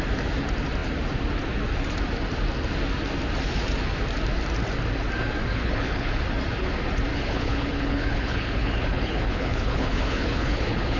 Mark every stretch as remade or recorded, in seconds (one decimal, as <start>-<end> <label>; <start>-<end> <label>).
0.0-5.5 recorded; 5.5-6.2 remade; 6.2-7.1 recorded; 7.1-11.0 remade